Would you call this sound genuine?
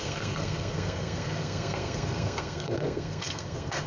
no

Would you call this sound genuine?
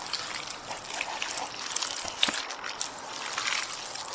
yes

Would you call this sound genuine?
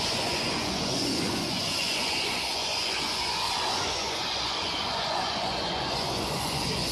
no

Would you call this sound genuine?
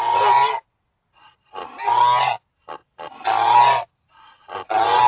yes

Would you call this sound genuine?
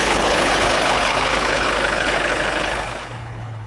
no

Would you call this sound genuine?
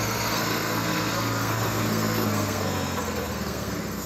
no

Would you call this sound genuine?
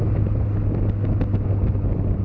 yes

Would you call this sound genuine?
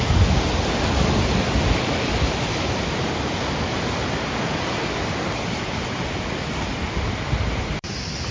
yes